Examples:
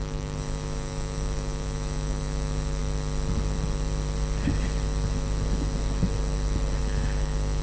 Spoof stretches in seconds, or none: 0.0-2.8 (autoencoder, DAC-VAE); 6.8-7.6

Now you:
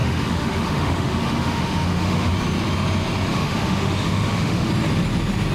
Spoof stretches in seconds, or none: 0.0-2.3 (autoencoder, DAC-VAE); 3.3-4.7

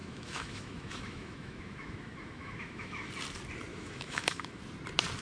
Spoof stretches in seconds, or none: 0.0-3.1 (autoencoder, DAC-VAE); 3.7-4.6

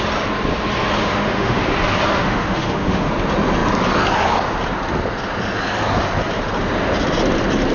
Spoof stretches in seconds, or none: 1.0-1.6 (autoencoder, DAC-VAE); 2.2-3.1